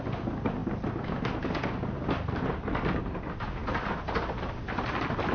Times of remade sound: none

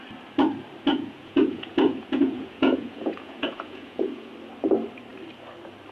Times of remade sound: 0.9-4.3 (vocoder, Vocos)